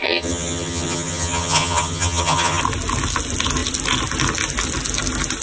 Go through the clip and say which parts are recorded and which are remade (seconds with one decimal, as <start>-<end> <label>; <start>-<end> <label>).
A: 0.0-2.6 remade; 2.6-5.4 recorded